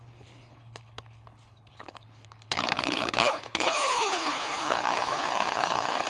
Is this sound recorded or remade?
remade